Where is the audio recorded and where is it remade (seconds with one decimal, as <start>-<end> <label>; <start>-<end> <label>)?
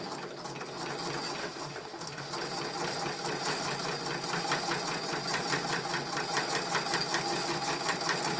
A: 0.0-1.4 recorded; 1.4-2.3 remade; 2.3-8.4 recorded